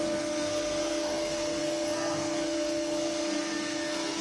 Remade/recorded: remade